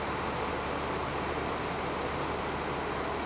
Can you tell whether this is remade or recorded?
recorded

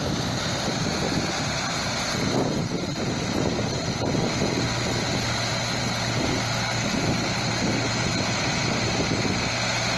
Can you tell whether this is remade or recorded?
recorded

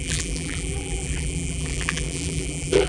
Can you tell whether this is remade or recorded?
remade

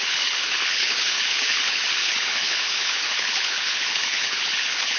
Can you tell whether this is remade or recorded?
remade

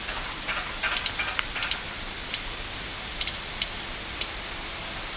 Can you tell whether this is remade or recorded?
recorded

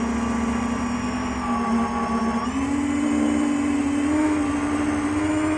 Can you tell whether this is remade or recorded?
recorded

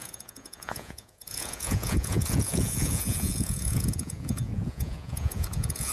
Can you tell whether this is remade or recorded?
remade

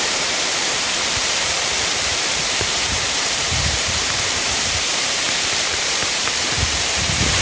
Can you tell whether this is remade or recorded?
remade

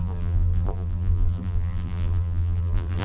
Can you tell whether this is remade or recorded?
remade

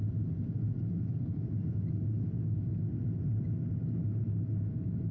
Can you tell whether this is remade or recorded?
recorded